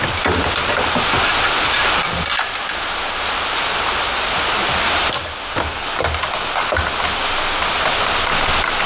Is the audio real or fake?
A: real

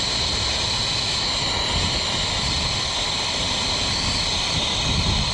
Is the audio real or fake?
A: real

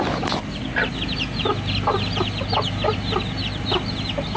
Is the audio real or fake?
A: real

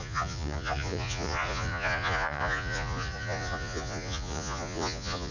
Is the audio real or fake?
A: fake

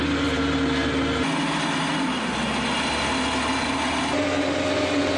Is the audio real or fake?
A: real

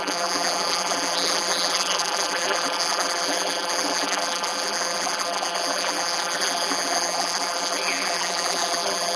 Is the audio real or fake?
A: fake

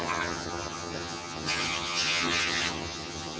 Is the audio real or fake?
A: fake